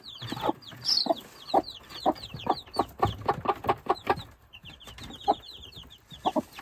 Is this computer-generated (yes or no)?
no